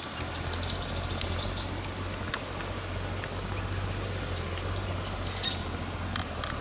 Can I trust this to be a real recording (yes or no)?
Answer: yes